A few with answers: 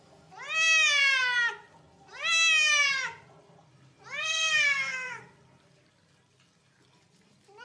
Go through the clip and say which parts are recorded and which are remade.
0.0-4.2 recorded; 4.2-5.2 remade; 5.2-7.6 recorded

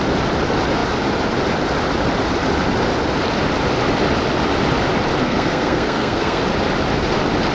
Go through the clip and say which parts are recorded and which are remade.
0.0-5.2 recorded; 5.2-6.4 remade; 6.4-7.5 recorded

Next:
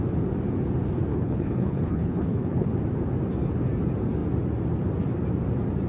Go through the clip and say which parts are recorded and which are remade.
0.0-1.1 recorded; 1.1-2.7 remade; 2.7-5.9 recorded